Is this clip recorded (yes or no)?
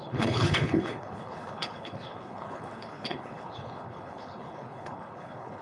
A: no